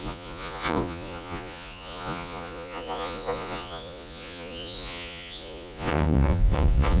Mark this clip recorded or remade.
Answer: remade